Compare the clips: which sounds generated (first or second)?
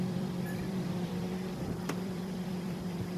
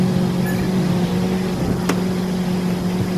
first